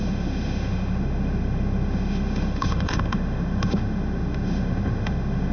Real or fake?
fake